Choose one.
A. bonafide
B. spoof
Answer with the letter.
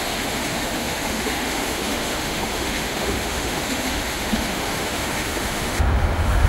B